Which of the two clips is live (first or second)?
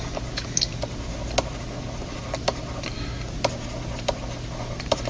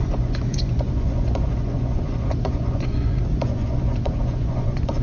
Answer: first